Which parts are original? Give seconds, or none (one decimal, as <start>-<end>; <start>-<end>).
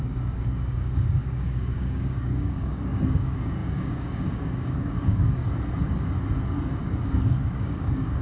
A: 5.4-6.8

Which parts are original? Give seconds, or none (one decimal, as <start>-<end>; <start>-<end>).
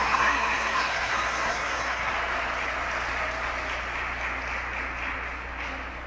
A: 2.1-6.1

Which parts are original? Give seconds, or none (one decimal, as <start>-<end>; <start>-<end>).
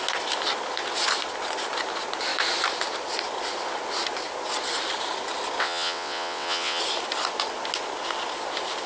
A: 0.0-5.6; 6.8-8.9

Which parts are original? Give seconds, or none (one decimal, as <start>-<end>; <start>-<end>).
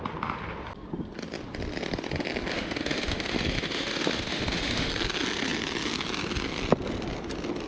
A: 0.0-2.5; 4.9-7.7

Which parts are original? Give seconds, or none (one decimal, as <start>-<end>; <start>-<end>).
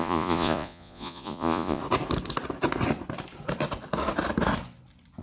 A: 1.8-5.2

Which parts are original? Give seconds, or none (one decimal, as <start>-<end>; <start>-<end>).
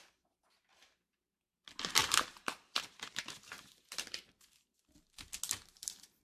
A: 0.0-2.0; 3.5-6.2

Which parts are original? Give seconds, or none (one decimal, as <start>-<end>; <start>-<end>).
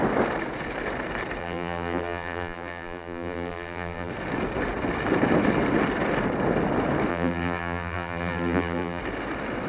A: 0.0-1.4; 4.1-7.1; 9.0-9.7